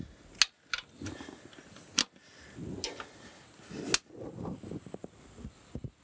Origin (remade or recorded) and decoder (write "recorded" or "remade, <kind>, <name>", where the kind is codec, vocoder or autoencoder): recorded